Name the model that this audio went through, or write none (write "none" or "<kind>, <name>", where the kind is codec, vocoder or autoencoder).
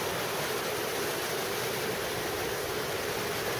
vocoder, BigVGAN v2